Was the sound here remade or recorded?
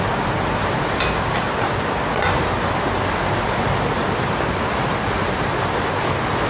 recorded